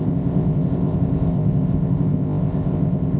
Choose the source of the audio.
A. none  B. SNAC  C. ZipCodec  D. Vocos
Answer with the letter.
C